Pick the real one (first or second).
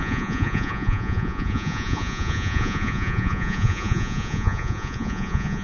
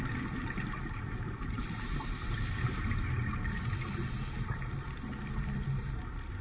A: second